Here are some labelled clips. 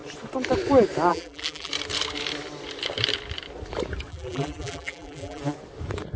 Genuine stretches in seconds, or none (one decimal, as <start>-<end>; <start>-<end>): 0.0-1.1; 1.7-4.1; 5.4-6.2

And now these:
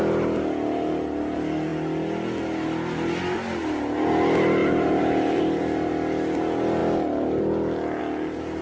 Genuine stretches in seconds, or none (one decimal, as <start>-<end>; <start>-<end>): 0.0-4.6; 5.9-8.6

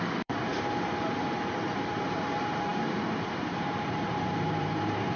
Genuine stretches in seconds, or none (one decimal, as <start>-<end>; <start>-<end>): 0.5-1.2

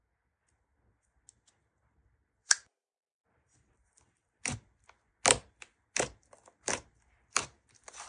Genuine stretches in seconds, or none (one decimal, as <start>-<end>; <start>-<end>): 0.0-2.4; 4.5-8.1